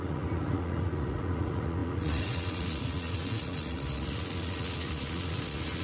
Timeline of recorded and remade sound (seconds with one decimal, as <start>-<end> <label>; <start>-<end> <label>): 0.0-5.8 remade